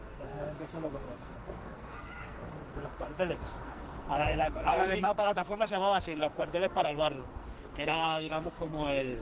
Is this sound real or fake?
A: fake